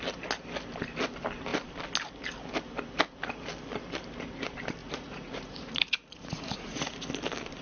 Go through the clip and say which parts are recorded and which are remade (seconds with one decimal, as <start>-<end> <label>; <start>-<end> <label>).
0.0-4.8 recorded; 4.8-6.9 remade; 6.9-7.6 recorded